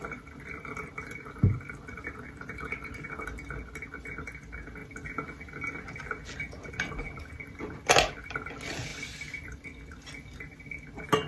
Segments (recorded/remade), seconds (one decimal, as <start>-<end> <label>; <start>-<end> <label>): 0.0-11.3 recorded